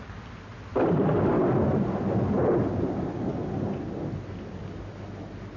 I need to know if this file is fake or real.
real